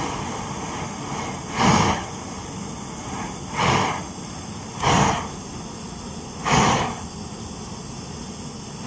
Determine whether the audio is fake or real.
real